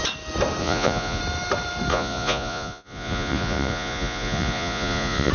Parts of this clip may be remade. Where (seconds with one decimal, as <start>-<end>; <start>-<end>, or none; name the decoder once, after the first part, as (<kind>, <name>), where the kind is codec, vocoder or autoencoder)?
0.6-1.2 (vocoder, Vocos); 1.9-5.3